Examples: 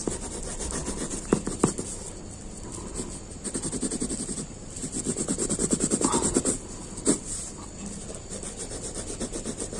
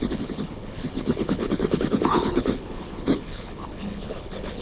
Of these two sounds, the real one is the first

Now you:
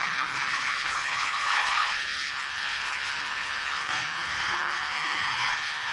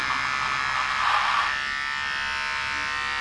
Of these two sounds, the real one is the second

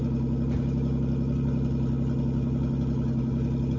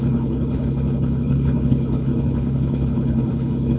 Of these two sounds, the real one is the first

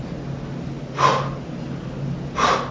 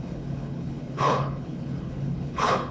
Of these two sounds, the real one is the first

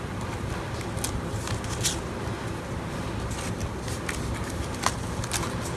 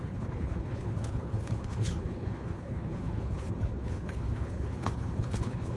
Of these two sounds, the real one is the first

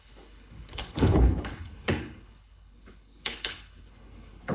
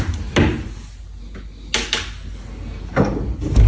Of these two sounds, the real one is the second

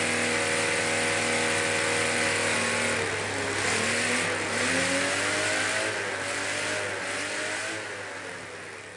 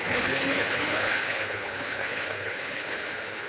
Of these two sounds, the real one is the first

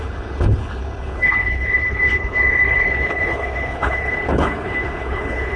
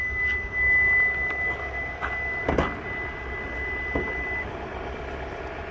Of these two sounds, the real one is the second